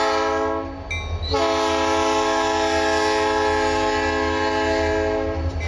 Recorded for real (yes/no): yes